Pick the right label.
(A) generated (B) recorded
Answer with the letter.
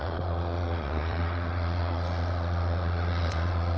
A